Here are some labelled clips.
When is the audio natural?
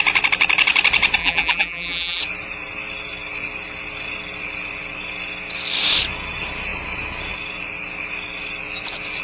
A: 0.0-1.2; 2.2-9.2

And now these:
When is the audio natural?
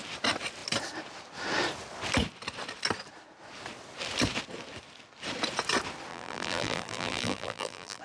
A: 0.0-6.1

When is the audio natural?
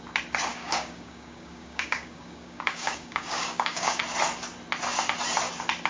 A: 0.0-0.5; 4.0-5.9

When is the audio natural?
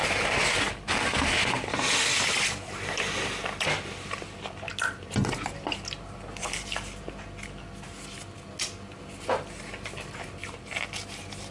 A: 0.0-11.5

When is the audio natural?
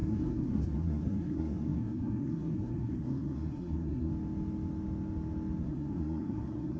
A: 4.1-5.6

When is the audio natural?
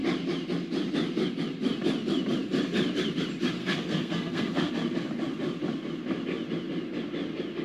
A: 0.0-3.6; 4.7-7.6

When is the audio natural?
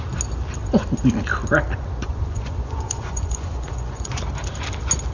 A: 0.0-2.0; 4.2-5.1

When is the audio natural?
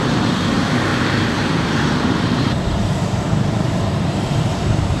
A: none